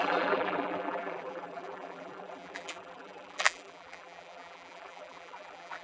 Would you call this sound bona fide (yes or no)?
no